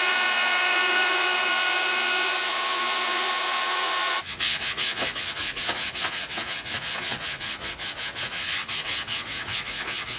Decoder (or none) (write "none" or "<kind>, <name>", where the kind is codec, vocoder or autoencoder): vocoder, Vocos